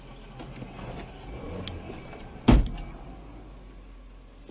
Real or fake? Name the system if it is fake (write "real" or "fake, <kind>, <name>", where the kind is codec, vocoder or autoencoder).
real